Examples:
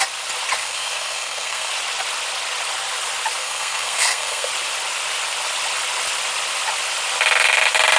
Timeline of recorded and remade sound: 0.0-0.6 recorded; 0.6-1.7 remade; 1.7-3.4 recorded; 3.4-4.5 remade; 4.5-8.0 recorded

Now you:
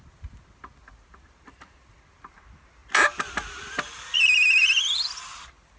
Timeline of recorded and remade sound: 0.0-5.8 recorded